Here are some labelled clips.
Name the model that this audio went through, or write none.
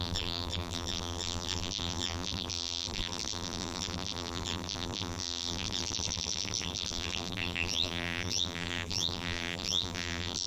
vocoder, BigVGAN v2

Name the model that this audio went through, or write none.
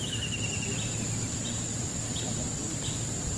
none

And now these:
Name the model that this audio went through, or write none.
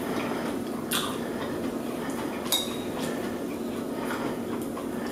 none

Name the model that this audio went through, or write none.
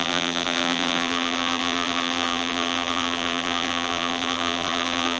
vocoder, BigVGAN v2